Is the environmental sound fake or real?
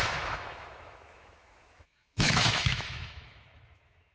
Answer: fake